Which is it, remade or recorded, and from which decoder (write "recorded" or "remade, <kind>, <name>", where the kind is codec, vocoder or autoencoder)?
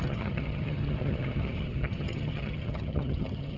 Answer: remade, vocoder, HiFi-GAN